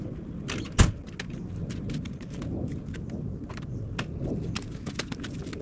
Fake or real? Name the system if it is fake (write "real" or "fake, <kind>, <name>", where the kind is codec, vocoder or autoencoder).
real